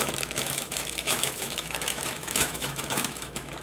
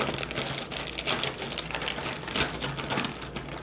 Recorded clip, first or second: second